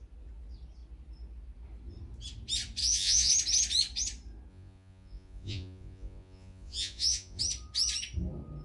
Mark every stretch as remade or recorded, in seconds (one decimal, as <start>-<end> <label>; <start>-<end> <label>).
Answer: 0.0-2.8 recorded; 2.8-3.3 remade; 3.3-4.5 recorded; 4.5-7.4 remade; 7.4-8.6 recorded